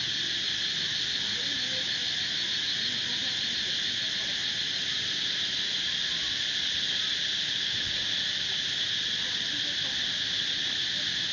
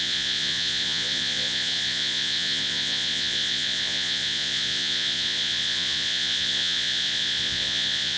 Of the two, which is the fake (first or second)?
second